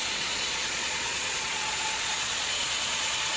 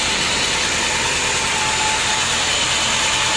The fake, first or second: first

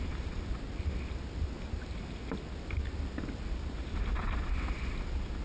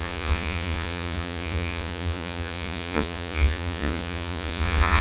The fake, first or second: second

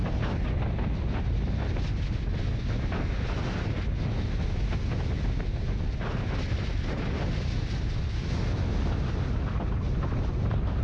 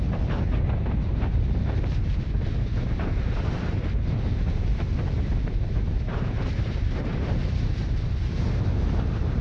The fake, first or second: second